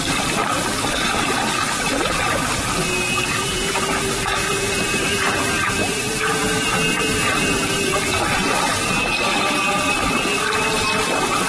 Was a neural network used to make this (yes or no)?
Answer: no